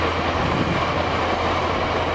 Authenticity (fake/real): real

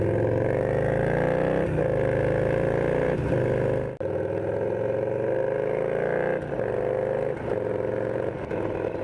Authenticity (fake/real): real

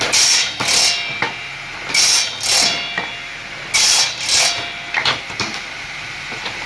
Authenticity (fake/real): real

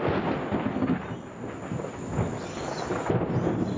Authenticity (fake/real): real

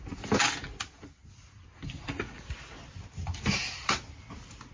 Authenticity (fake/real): real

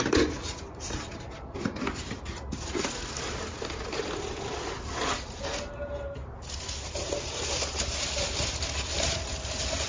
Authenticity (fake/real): real